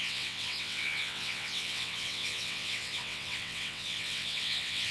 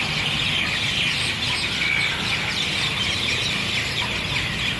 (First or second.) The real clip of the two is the second